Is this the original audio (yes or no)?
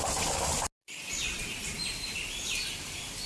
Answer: yes